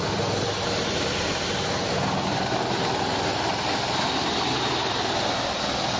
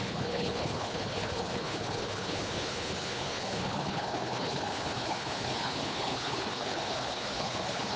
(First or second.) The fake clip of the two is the second